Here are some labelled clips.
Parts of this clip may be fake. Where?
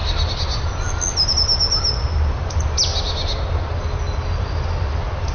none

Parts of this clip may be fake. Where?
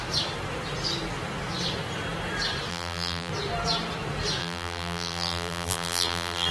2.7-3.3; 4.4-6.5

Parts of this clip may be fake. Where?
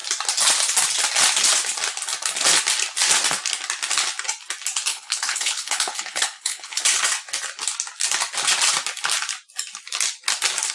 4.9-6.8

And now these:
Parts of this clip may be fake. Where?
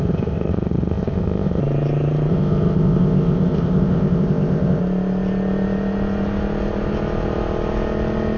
0.0-1.6; 2.3-4.8